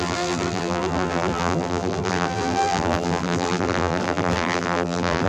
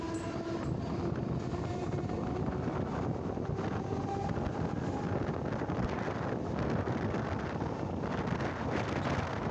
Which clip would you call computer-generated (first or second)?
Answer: first